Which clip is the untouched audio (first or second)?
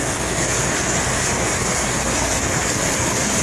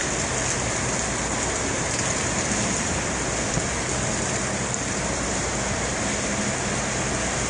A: second